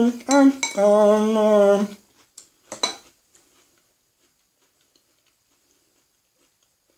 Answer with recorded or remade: recorded